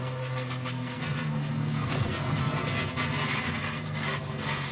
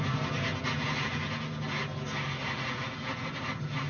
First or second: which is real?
second